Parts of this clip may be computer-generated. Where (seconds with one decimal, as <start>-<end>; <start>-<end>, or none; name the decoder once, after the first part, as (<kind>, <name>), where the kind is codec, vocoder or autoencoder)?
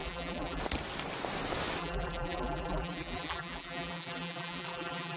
0.0-0.6 (vocoder, BigVGAN v2); 1.8-5.2